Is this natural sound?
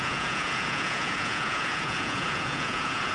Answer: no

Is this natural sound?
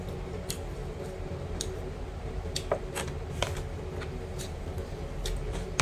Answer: yes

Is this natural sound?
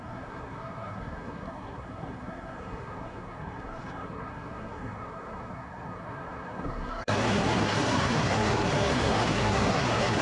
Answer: no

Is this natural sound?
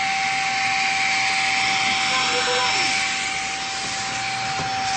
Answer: yes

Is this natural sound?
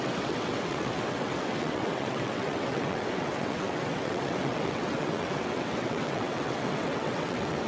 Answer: no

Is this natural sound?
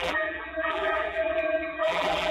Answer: no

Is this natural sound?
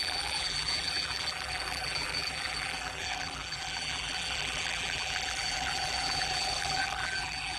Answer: no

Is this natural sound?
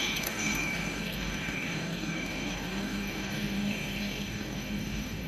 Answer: no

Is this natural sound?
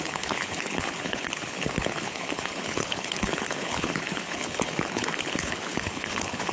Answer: no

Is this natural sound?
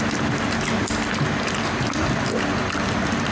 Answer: yes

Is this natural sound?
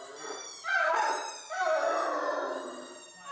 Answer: yes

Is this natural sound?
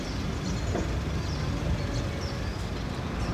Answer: yes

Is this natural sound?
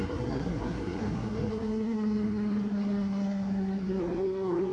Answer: no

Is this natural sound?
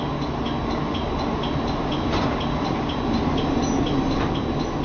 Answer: yes